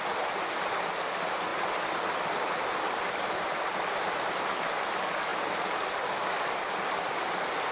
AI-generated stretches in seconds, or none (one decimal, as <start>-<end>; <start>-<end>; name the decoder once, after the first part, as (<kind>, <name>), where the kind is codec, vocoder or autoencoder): none